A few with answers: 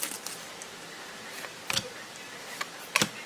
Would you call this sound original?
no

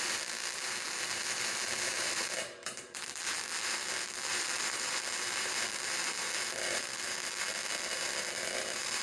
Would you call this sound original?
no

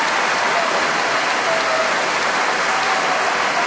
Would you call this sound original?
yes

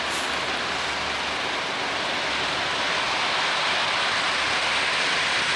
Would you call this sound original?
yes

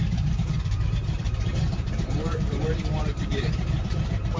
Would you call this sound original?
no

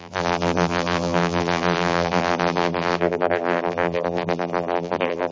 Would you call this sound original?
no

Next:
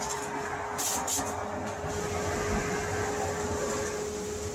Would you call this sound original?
yes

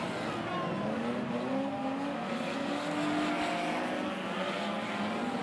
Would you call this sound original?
yes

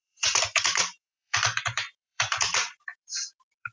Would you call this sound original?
no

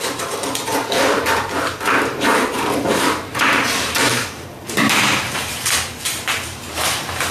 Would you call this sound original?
no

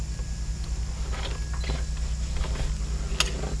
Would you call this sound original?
yes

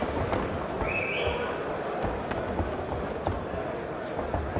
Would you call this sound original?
no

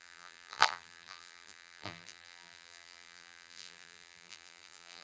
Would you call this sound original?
no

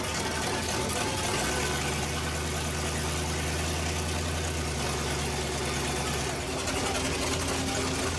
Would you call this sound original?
yes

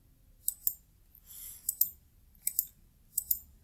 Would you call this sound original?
yes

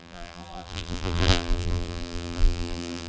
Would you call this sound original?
no